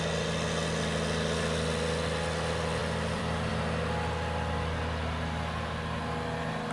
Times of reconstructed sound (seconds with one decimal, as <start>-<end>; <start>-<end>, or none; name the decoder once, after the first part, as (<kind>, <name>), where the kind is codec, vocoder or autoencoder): 2.8-3.5 (vocoder, BigVGAN v2)